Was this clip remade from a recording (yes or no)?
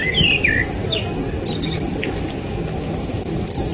no